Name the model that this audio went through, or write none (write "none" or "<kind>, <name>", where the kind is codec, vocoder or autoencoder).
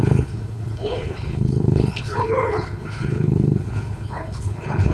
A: codec, HILCodec